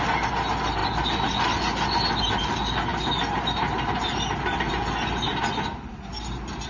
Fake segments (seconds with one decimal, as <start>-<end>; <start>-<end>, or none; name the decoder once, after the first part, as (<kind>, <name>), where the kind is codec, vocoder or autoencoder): none